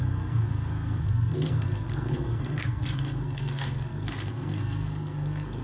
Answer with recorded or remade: remade